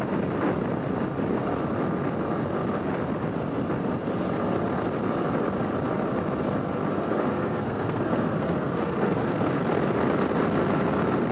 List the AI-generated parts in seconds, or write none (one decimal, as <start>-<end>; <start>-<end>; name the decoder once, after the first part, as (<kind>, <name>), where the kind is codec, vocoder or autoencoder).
6.9-9.6 (codec, SNAC)